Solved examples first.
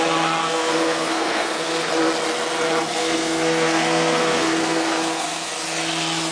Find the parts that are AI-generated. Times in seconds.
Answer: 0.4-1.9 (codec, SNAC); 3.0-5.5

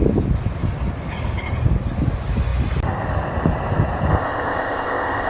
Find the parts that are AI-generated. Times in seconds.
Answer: 4.1-5.3 (codec, ZipCodec)

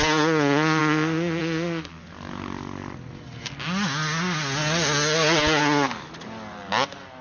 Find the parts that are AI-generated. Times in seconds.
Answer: none

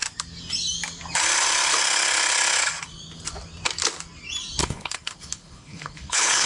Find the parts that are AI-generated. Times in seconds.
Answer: 4.6-6.5 (codec, HILCodec)